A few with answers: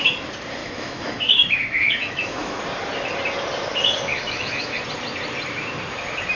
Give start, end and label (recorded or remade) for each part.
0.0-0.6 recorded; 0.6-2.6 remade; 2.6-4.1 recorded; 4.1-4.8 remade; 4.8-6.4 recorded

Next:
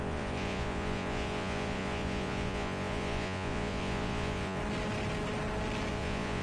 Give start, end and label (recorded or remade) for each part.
0.0-4.6 remade; 4.6-5.9 recorded; 5.9-6.4 remade

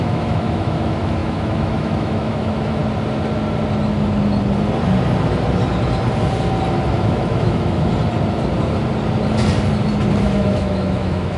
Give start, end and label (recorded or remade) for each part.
0.0-2.8 remade; 2.8-7.0 recorded; 7.0-7.9 remade; 7.9-10.2 recorded; 10.2-11.4 remade

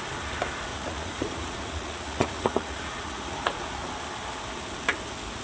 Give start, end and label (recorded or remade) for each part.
0.0-0.7 recorded; 0.7-3.9 remade; 3.9-5.4 recorded

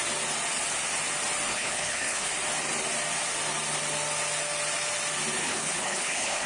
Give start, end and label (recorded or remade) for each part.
0.0-1.5 recorded; 1.5-2.3 remade; 2.3-5.4 recorded; 5.4-6.5 remade

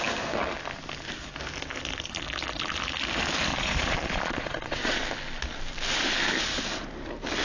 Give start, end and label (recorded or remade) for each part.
0.0-3.5 recorded; 3.5-5.0 remade; 5.0-7.4 recorded

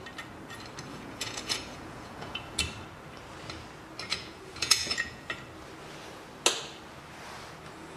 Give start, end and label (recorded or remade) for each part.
0.0-0.9 recorded; 0.9-2.6 remade; 2.6-4.1 recorded; 4.1-5.3 remade; 5.3-8.0 recorded

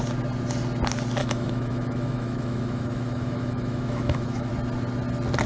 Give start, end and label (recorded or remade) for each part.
0.0-1.2 recorded; 1.2-4.5 remade; 4.5-5.5 recorded